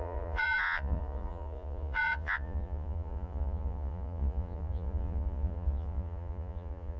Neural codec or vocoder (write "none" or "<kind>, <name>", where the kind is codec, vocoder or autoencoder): vocoder, Vocos